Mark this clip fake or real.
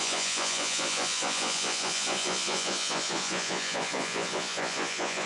fake